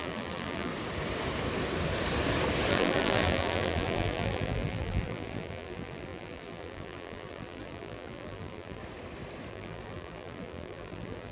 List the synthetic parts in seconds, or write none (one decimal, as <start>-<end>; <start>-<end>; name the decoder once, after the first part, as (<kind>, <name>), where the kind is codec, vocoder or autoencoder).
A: 0.0-0.7 (vocoder, BigVGAN v2); 2.7-8.8; 9.5-11.3